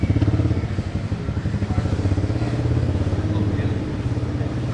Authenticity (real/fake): real